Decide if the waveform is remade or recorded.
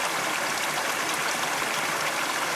recorded